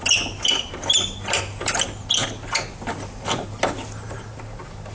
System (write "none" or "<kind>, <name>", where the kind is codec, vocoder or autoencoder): none